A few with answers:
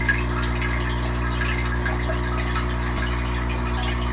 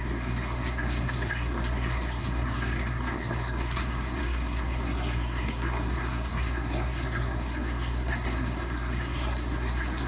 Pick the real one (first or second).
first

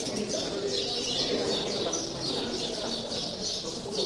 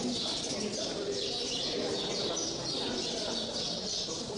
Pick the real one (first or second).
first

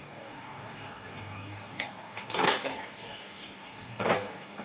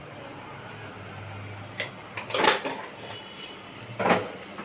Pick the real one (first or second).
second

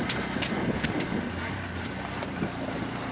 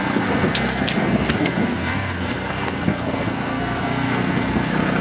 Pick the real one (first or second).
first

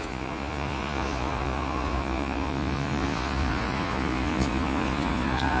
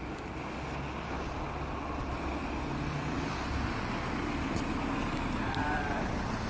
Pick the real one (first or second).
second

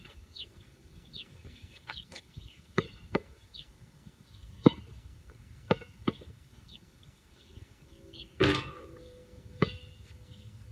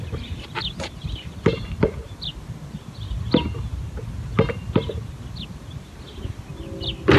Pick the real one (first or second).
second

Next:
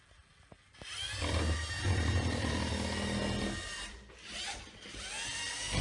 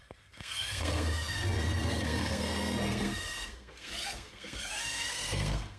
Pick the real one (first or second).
first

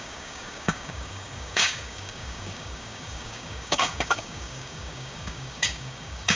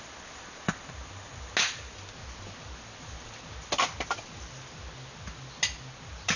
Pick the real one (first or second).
second